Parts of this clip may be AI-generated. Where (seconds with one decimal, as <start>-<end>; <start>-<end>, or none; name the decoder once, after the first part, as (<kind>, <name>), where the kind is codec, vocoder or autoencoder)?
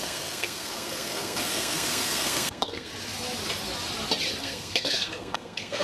0.0-2.9 (codec, SNAC); 4.4-5.8